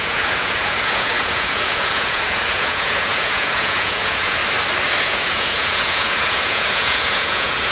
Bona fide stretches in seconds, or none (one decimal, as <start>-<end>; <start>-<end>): 4.4-5.0